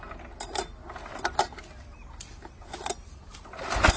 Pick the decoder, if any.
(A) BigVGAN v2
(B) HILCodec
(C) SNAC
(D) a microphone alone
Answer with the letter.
D